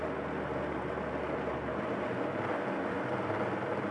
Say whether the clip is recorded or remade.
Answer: recorded